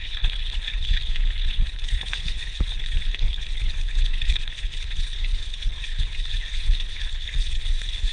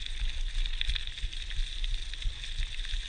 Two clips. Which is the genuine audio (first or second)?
second